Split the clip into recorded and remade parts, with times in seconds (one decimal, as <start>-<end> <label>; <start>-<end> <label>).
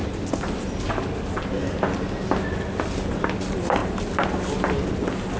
0.0-5.4 recorded